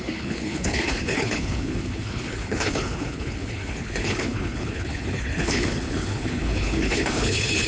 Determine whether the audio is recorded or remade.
remade